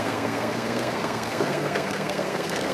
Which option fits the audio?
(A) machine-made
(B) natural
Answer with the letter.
A